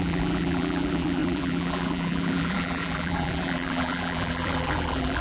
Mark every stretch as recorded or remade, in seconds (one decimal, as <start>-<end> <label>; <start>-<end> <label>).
0.0-5.2 remade